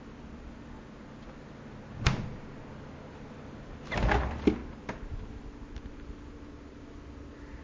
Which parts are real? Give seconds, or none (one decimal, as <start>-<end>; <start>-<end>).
0.0-7.6